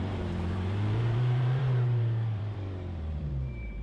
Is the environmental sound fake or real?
fake